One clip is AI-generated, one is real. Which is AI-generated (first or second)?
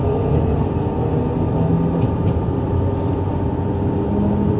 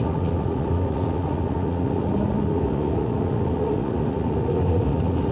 second